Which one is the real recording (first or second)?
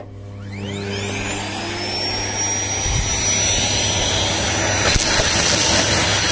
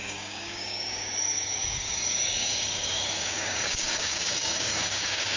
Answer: first